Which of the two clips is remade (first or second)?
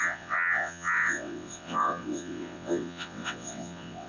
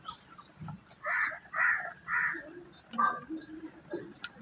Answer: first